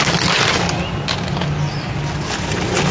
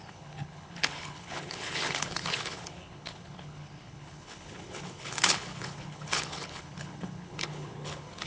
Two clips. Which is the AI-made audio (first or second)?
second